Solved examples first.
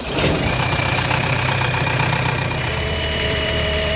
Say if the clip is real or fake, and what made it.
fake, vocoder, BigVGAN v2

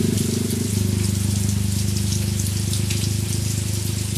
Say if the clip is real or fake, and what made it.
real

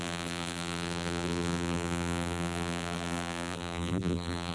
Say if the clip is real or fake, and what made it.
fake, vocoder, BigVGAN v2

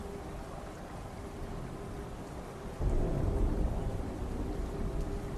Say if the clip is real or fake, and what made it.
real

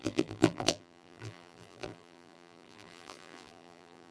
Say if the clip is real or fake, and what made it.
fake, vocoder, BigVGAN v2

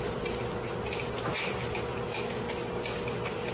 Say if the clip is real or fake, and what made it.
real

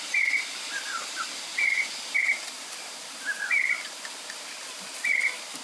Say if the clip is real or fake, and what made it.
fake, vocoder, BigVGAN v2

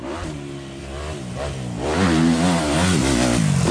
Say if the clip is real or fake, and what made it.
real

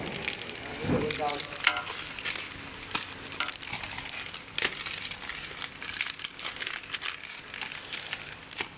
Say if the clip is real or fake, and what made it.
real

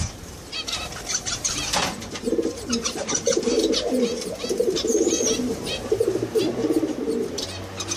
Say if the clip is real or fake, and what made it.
fake, vocoder, BigVGAN v2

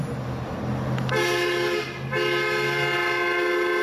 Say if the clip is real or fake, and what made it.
real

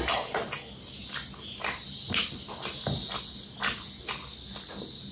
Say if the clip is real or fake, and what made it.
real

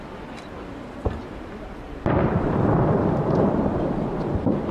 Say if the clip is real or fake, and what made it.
fake, vocoder, BigVGAN v2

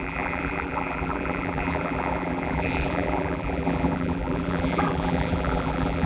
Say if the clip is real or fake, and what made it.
fake, vocoder, BigVGAN v2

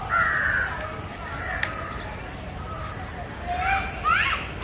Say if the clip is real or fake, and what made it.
fake, vocoder, BigVGAN v2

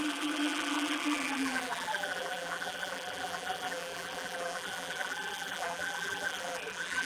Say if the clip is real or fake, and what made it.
fake, vocoder, BigVGAN v2